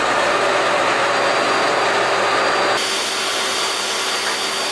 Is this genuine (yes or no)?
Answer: yes